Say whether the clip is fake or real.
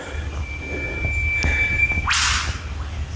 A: real